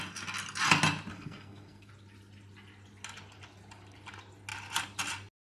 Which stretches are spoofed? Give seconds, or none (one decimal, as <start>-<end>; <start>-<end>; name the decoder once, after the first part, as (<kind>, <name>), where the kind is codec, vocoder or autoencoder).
1.1-1.9 (codec, SNAC)